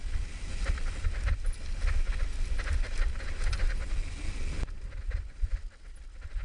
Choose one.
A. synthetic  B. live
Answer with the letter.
B